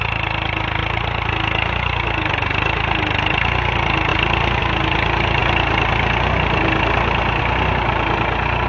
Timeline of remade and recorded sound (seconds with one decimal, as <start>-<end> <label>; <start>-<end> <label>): 0.0-0.8 recorded; 0.8-1.3 remade; 1.3-4.1 recorded; 4.1-4.6 remade; 4.6-8.7 recorded